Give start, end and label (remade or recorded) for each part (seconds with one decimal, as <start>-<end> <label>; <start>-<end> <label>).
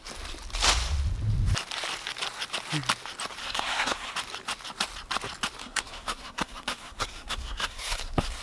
0.0-3.4 recorded; 3.4-4.1 remade; 4.1-5.6 recorded; 5.6-8.4 remade